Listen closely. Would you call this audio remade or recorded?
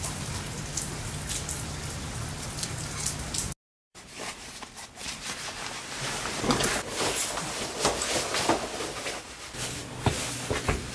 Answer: recorded